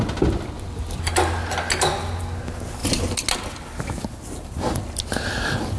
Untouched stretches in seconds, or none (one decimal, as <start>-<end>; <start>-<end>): 0.0-5.8